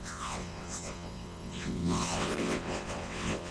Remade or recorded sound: remade